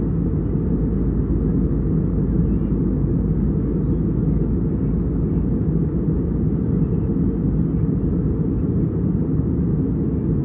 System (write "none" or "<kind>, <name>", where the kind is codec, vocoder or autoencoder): none